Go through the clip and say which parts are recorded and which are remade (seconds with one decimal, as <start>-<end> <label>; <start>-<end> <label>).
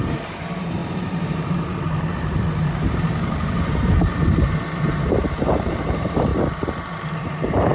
0.0-7.7 remade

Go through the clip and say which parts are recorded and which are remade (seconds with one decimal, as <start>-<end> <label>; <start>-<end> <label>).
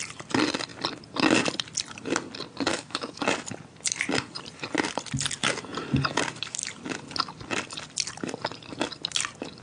0.0-2.7 recorded; 2.7-3.2 remade; 3.2-9.6 recorded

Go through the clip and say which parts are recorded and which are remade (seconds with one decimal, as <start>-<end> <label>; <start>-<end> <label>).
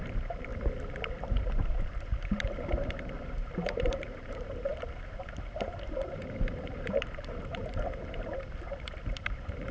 0.0-0.5 remade; 0.5-1.1 recorded; 1.1-9.7 remade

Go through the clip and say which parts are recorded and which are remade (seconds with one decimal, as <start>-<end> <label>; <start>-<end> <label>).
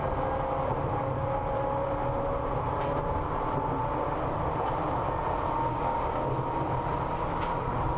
0.0-5.7 recorded; 5.7-6.3 remade; 6.3-8.0 recorded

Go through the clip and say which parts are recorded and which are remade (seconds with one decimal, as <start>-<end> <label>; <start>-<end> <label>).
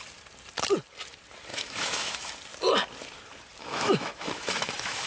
0.0-1.5 recorded; 1.5-2.3 remade; 2.3-3.6 recorded; 3.6-5.1 remade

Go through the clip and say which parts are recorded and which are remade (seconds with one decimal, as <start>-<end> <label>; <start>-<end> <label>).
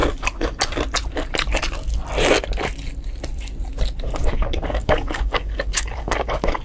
0.0-4.2 recorded; 4.2-6.6 remade